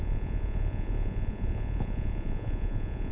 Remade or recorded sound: remade